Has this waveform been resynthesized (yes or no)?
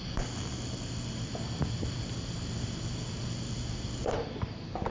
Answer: no